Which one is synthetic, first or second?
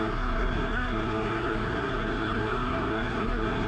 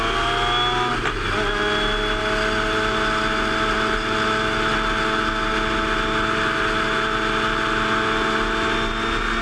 first